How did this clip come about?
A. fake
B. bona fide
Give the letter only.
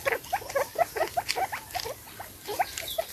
B